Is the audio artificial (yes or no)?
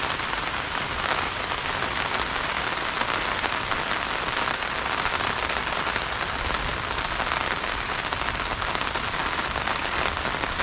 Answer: no